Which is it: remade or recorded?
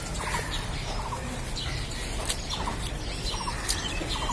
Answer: recorded